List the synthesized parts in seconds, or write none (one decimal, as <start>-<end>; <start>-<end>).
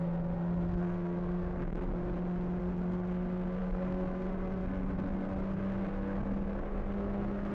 0.0-1.9; 2.6-7.5